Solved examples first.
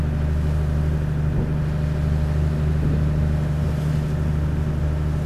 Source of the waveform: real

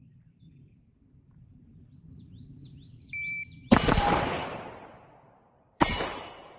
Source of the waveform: fake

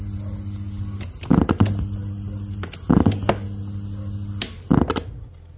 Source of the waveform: real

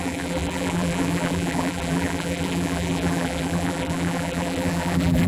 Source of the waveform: fake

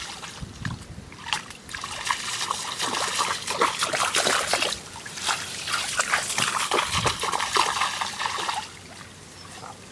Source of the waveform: real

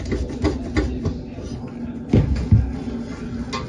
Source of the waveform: real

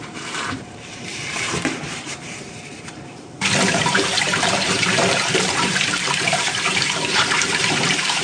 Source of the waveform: fake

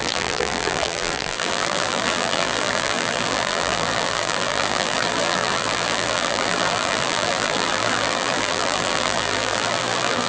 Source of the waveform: fake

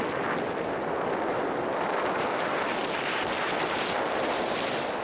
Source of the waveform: real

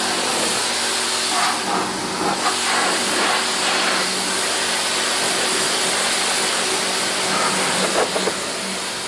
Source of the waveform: real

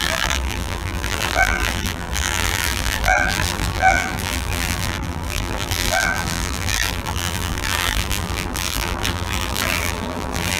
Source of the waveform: fake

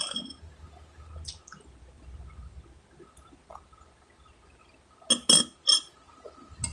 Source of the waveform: real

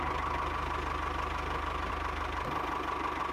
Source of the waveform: real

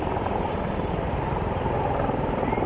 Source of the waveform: fake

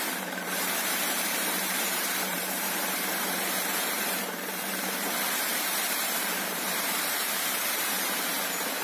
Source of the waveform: fake